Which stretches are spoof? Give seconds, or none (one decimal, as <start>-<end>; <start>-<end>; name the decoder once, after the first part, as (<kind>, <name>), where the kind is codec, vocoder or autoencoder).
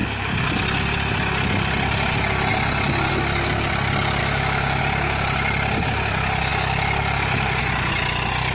4.2-4.8 (autoencoder, DAC-VAE)